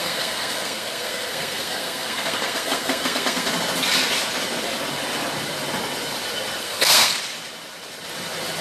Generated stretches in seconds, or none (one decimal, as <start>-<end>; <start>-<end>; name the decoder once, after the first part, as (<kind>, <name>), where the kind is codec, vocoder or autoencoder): 0.0-3.5 (codec, SNAC); 6.6-7.2